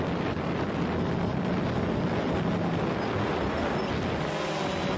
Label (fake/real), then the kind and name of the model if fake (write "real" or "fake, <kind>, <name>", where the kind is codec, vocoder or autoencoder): real